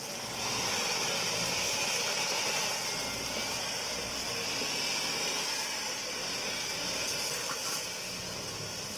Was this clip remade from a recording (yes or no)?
no